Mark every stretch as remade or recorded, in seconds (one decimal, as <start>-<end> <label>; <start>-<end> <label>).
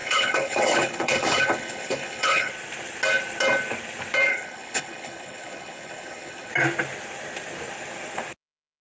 0.0-2.5 remade; 2.5-4.3 recorded; 4.3-6.5 remade; 6.5-8.8 recorded